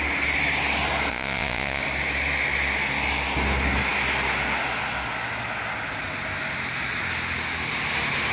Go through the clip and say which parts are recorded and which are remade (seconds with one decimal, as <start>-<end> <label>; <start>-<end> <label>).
0.0-1.1 recorded; 1.1-1.8 remade; 1.8-8.3 recorded

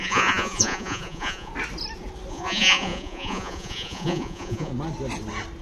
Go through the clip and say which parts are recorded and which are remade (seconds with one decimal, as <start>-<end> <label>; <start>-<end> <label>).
0.0-1.5 remade; 1.5-2.3 recorded; 2.3-4.7 remade; 4.7-5.6 recorded

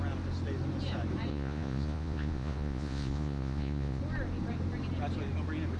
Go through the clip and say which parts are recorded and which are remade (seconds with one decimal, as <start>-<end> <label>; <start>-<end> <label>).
0.0-1.3 recorded; 1.3-4.0 remade; 4.0-5.8 recorded

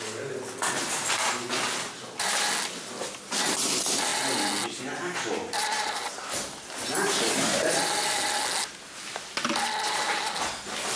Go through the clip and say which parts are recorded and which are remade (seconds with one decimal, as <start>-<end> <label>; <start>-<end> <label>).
0.0-11.0 recorded

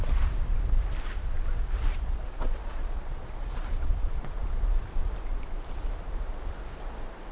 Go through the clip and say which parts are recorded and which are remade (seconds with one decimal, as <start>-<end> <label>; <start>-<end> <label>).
0.0-1.9 recorded; 1.9-4.4 remade; 4.4-7.3 recorded